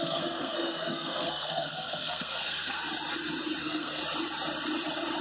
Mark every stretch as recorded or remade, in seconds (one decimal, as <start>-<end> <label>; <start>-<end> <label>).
0.0-2.8 remade; 2.8-3.6 recorded; 3.6-4.0 remade; 4.0-5.2 recorded